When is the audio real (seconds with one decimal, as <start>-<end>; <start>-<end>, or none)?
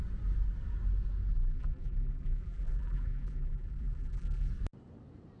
0.0-1.3; 4.5-5.4